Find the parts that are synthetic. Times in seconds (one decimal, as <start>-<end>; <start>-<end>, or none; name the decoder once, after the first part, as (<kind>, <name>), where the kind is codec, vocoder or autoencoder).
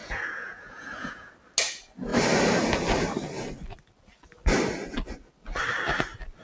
0.0-1.3 (vocoder, Vocos)